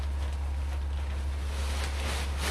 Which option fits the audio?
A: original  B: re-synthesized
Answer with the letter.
A